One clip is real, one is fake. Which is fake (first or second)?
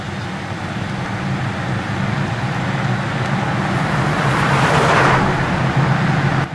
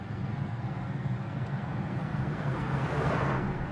second